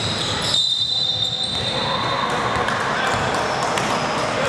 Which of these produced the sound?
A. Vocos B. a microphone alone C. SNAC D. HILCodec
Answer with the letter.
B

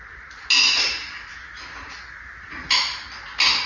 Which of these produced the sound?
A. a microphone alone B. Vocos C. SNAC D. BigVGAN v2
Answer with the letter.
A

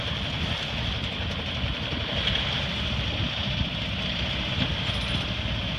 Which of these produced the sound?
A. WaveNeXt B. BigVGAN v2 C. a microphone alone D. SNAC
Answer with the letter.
C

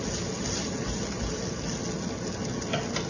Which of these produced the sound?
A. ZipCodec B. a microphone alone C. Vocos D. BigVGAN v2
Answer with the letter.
B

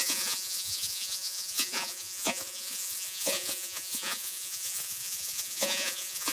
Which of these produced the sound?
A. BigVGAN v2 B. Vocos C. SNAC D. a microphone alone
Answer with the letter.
B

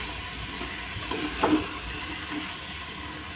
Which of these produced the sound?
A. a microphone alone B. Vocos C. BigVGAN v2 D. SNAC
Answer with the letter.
A